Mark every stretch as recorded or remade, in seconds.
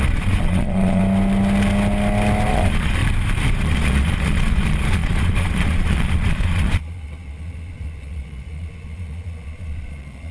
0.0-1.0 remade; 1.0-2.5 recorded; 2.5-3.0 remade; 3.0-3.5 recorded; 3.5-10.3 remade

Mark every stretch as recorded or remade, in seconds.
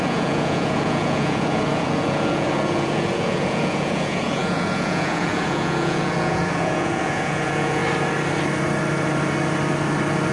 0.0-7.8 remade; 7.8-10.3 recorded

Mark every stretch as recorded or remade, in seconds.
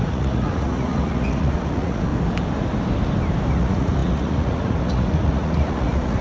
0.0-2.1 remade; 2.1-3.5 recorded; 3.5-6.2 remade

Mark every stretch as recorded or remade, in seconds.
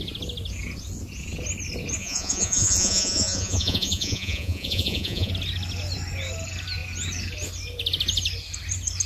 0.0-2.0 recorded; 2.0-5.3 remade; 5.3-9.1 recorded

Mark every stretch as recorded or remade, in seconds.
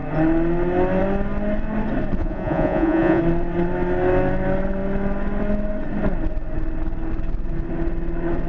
0.0-2.2 recorded; 2.2-3.2 remade; 3.2-8.5 recorded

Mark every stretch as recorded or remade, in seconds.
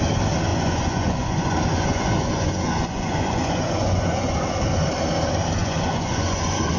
0.0-0.5 recorded; 0.5-4.4 remade; 4.4-5.6 recorded; 5.6-6.8 remade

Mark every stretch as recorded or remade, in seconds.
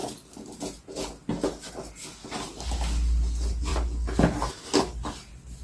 0.0-5.6 recorded